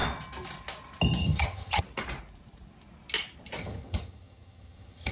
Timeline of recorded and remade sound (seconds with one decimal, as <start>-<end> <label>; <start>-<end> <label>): 0.0-1.2 recorded; 1.2-1.8 remade; 1.8-3.6 recorded; 3.6-5.1 remade